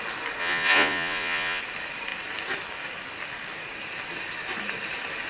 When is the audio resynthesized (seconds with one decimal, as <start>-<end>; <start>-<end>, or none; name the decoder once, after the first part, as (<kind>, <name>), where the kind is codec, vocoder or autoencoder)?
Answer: 0.4-1.6 (vocoder, Vocos)